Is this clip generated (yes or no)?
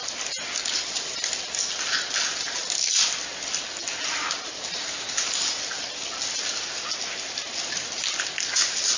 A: no